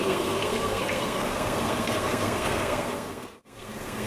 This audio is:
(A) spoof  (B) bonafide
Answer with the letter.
A